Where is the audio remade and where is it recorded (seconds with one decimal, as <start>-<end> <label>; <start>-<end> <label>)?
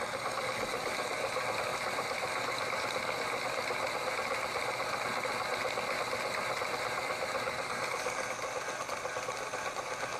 0.0-10.2 recorded